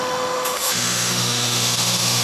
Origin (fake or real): fake